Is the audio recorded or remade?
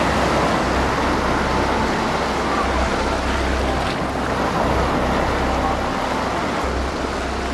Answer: recorded